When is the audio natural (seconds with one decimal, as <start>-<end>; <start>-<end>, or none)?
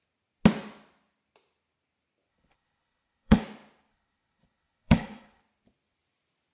0.0-2.3; 3.4-3.9; 5.4-6.5